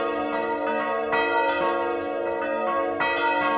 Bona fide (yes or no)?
yes